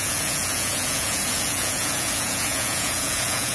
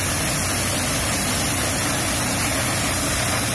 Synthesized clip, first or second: first